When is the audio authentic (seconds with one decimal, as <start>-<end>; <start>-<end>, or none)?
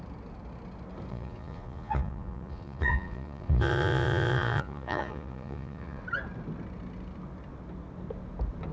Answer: 0.0-1.1; 6.0-8.7